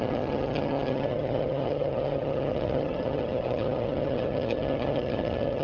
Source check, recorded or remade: remade